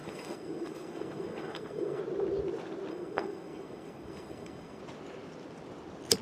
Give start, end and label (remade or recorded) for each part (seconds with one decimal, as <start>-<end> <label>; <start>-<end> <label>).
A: 0.0-2.0 remade; 2.0-2.9 recorded; 2.9-4.8 remade; 4.8-6.2 recorded